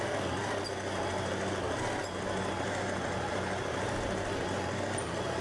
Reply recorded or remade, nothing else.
recorded